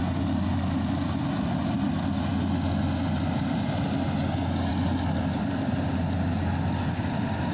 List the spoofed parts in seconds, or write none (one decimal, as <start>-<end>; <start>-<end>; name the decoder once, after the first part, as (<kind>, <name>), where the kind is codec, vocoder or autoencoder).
none